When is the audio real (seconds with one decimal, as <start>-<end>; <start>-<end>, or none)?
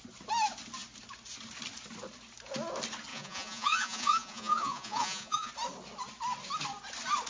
0.0-3.1; 5.5-7.3